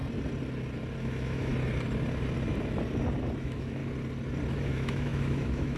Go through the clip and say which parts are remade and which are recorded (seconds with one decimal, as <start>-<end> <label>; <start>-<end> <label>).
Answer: 0.0-1.0 recorded; 1.0-1.5 remade; 1.5-3.4 recorded; 3.4-3.8 remade; 3.8-4.5 recorded; 4.5-5.8 remade